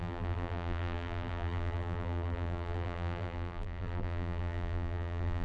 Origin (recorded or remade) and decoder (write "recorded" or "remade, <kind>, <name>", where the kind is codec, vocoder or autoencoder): remade, vocoder, BigVGAN v2